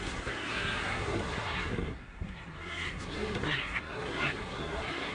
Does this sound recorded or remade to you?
remade